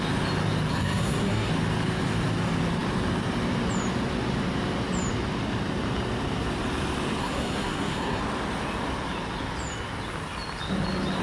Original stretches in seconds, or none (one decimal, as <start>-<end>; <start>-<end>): 0.0-0.7; 1.5-7.2; 8.2-11.2